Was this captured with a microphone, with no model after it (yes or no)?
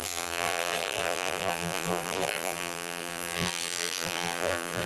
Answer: no